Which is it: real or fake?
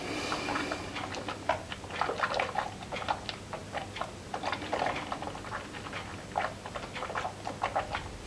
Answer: real